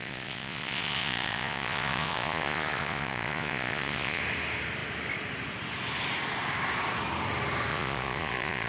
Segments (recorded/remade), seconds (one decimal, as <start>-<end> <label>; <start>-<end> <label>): 0.0-4.2 remade; 4.2-7.7 recorded; 7.7-8.7 remade